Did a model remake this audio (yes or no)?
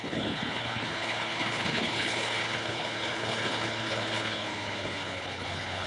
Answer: yes